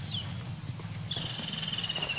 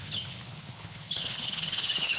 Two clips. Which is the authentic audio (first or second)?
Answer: first